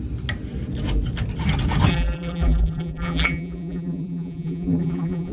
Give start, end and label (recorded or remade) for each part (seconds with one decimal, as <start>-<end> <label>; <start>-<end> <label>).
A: 0.0-1.9 recorded; 1.9-5.3 remade